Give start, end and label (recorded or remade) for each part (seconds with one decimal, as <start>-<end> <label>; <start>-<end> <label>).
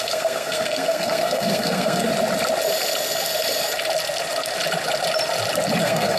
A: 0.0-2.1 remade; 2.1-5.8 recorded; 5.8-6.2 remade